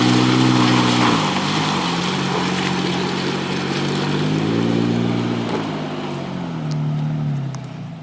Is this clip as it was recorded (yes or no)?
yes